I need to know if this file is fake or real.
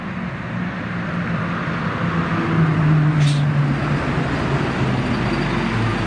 real